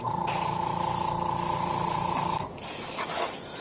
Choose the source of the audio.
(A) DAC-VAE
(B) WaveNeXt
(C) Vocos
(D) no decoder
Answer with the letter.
D